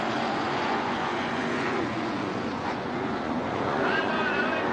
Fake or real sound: fake